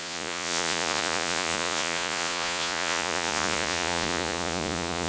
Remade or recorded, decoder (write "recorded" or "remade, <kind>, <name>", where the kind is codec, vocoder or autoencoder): remade, vocoder, Vocos